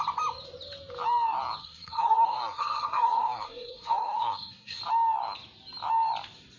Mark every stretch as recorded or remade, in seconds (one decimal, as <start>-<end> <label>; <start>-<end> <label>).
0.0-1.6 recorded; 1.6-4.8 remade; 4.8-6.6 recorded